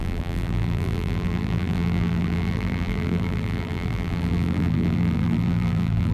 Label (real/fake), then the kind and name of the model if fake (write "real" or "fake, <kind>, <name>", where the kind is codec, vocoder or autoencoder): fake, vocoder, BigVGAN v2